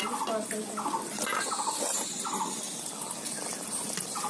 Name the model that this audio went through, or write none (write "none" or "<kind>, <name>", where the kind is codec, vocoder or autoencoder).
none